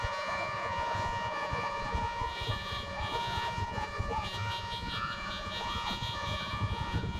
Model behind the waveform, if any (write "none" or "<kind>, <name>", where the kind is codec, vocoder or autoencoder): vocoder, Vocos